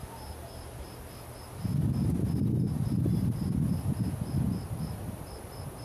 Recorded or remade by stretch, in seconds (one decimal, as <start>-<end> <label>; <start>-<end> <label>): 0.0-5.8 recorded